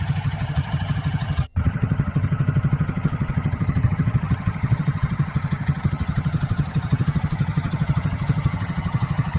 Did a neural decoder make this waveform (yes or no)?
yes